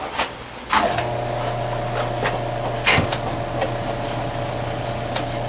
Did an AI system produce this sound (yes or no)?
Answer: no